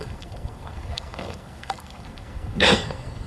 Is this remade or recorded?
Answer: remade